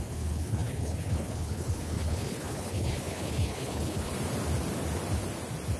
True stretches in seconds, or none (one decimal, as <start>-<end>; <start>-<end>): 4.1-5.8